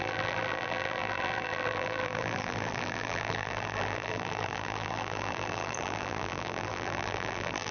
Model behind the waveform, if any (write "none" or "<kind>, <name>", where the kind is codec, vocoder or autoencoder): vocoder, BigVGAN v2